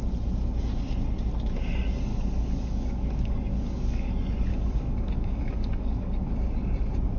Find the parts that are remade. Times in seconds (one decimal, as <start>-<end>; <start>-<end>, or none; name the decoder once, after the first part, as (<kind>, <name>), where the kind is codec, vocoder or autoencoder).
2.1-4.1 (codec, DAC); 4.5-6.3